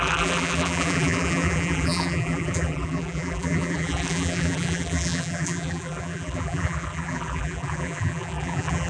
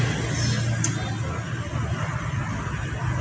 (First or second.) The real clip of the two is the second